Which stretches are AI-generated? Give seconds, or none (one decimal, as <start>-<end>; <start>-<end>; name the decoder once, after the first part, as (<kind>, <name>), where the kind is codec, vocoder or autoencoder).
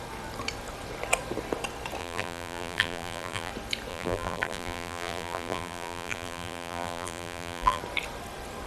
2.0-3.5 (vocoder, BigVGAN v2); 3.9-7.8